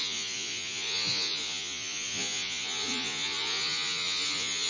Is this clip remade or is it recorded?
remade